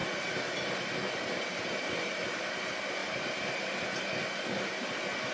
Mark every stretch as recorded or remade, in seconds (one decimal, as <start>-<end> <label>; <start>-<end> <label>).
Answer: 0.0-2.5 remade; 2.5-3.0 recorded; 3.0-4.0 remade; 4.0-5.3 recorded